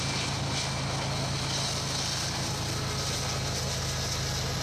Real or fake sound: real